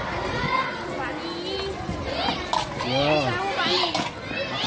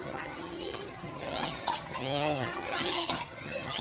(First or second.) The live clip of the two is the first